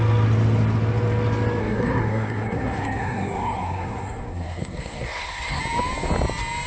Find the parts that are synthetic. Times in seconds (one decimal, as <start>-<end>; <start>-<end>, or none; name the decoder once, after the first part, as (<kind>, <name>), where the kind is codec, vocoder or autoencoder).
1.6-5.6 (codec, SNAC)